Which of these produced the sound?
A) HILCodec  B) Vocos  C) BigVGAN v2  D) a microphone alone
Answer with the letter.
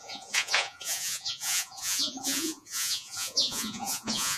B